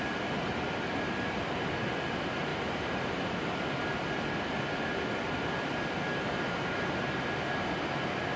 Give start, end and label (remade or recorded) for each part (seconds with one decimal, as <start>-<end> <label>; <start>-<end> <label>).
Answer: 0.0-2.5 recorded; 2.5-3.4 remade; 3.4-8.4 recorded